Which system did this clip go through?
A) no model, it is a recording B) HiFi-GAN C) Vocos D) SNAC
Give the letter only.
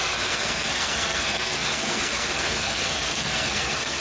D